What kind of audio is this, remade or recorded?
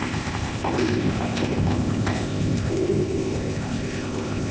remade